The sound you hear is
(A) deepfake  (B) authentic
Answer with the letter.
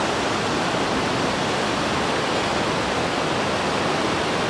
B